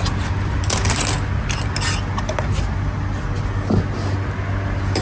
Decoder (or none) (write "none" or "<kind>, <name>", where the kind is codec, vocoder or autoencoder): none